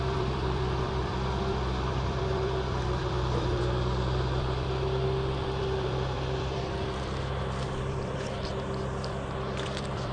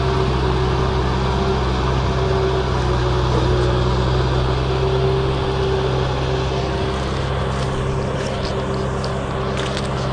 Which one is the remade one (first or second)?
first